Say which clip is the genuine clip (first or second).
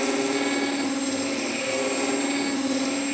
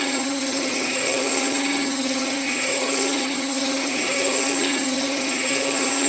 first